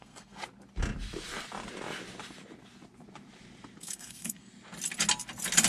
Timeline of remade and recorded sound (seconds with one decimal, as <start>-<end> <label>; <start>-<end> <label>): 0.0-0.4 remade; 0.4-3.8 recorded; 3.8-4.5 remade; 4.5-5.7 recorded